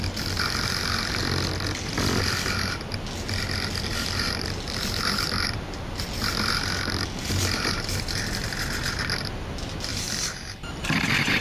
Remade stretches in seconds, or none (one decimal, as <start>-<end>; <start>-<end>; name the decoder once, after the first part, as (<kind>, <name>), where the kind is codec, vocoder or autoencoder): none

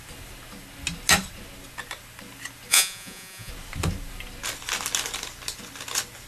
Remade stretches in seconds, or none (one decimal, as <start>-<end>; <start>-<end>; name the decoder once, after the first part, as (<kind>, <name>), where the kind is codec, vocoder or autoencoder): 2.7-3.5 (vocoder, Vocos)

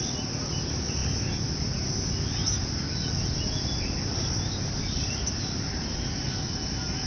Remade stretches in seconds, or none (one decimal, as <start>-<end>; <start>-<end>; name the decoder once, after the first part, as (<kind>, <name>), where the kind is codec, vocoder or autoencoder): none

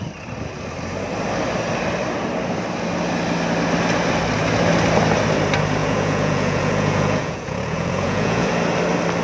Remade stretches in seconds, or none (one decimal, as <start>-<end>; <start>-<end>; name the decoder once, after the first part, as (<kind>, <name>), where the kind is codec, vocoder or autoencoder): 5.8-8.5 (vocoder, Vocos)

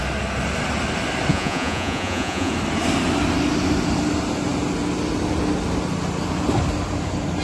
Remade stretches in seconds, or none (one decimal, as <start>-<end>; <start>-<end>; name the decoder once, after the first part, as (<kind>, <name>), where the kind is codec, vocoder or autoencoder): 1.3-2.5 (vocoder, Vocos)

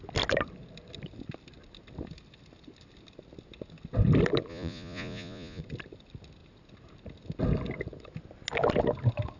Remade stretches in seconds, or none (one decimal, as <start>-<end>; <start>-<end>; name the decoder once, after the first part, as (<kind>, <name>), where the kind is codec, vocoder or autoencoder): 4.5-5.6 (vocoder, Vocos)

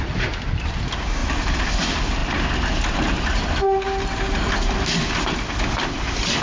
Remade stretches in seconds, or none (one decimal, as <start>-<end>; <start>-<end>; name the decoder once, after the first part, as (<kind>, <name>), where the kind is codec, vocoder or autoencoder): none

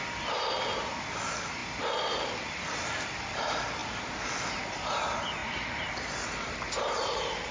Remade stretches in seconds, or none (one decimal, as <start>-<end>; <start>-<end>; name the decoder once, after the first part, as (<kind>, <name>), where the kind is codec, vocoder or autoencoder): none